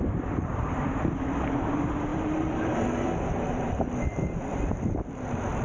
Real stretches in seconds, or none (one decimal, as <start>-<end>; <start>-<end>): none